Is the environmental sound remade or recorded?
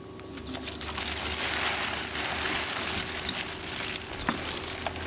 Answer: recorded